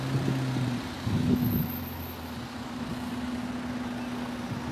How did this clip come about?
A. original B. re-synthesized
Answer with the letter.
A